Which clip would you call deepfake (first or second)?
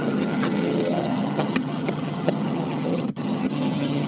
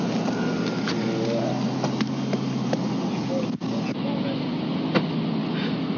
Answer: first